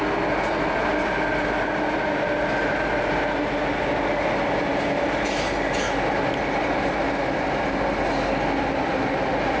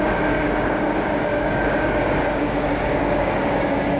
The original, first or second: first